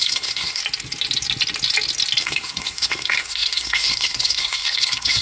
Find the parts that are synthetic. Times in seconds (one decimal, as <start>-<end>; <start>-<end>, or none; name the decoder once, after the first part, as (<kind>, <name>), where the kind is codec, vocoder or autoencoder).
0.0-0.6 (codec, SNAC); 2.2-5.2